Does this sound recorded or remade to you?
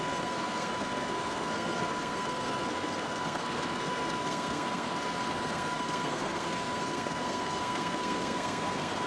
remade